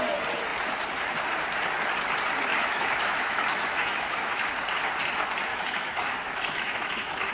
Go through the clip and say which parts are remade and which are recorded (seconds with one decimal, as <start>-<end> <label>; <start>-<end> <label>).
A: 0.0-2.5 recorded; 2.5-4.5 remade; 4.5-5.5 recorded; 5.5-7.3 remade

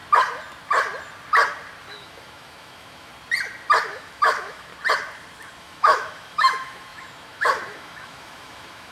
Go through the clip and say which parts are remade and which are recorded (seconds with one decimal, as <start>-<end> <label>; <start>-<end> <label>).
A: 0.0-1.9 recorded; 1.9-3.1 remade; 3.1-3.8 recorded; 3.8-4.7 remade; 4.7-5.6 recorded; 5.6-8.9 remade

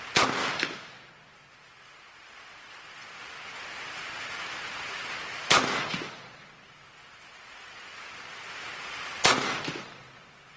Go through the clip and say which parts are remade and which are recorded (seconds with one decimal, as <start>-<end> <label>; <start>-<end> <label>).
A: 0.0-0.4 recorded; 0.4-1.1 remade; 1.1-10.6 recorded

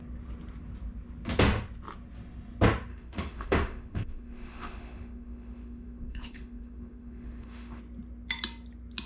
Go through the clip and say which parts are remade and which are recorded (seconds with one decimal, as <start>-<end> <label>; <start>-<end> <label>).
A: 0.0-2.9 recorded; 2.9-7.8 remade; 7.8-9.1 recorded